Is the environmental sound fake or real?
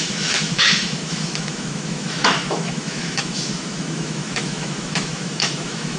fake